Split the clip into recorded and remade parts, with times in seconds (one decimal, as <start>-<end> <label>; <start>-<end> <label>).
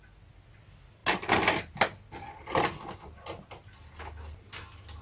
0.0-5.0 recorded